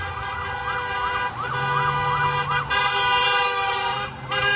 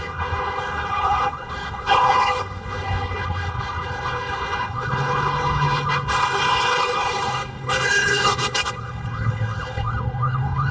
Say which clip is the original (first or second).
first